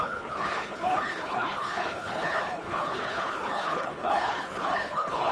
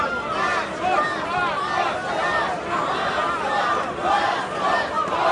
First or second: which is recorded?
second